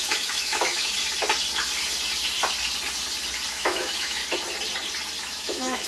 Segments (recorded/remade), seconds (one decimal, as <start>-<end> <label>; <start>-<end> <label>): 0.0-0.9 remade; 0.9-3.5 recorded; 3.5-4.2 remade; 4.2-5.2 recorded; 5.2-5.9 remade